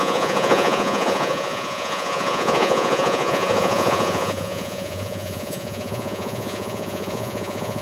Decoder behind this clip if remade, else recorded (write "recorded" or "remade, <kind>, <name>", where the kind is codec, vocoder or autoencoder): remade, vocoder, Vocos